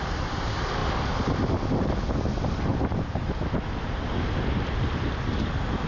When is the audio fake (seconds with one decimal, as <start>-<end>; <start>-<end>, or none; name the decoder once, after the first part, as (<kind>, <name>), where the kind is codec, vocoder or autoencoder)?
2.7-5.9 (vocoder, BigVGAN v2)